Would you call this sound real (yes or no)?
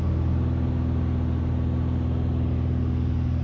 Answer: yes